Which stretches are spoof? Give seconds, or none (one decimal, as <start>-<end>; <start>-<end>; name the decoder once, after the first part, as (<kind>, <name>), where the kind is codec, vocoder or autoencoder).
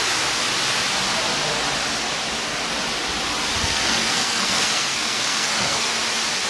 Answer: 3.6-5.9 (codec, SNAC)